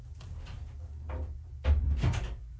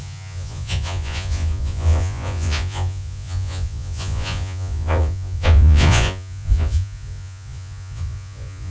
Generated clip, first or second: second